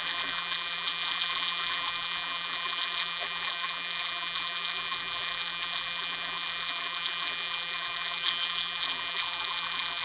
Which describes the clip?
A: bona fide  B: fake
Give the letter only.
B